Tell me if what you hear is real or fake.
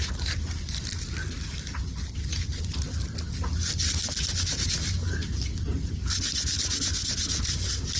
real